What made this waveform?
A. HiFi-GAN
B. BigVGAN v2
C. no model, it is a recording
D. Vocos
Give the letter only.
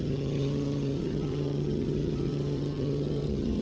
A